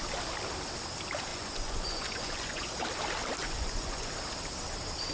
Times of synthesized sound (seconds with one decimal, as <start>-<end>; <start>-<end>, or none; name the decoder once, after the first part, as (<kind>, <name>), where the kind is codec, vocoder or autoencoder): 1.3-2.7 (vocoder, Vocos); 3.4-4.1